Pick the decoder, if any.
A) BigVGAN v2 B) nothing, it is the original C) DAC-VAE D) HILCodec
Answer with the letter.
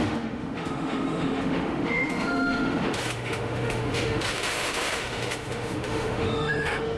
C